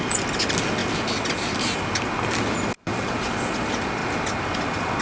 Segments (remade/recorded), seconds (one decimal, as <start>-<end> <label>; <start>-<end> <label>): 0.0-5.0 recorded